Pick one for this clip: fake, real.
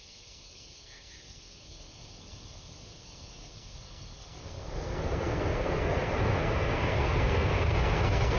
fake